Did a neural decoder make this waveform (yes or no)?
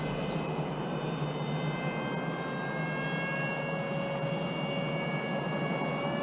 no